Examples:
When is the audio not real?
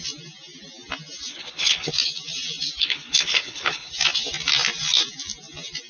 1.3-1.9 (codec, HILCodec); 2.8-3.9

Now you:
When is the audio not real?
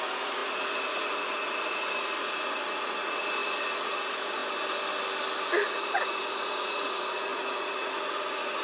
0.0-4.4 (vocoder, Vocos); 5.5-8.6